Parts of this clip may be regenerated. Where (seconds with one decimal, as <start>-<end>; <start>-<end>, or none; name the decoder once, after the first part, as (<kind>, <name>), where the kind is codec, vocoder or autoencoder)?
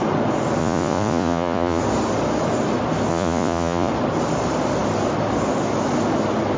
0.6-1.8 (vocoder, Vocos); 3.1-3.9